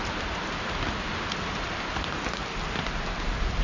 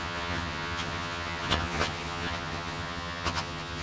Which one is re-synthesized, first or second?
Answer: second